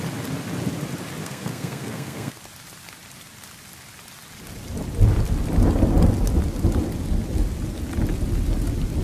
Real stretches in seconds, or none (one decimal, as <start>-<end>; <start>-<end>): 0.0-1.2; 2.4-9.0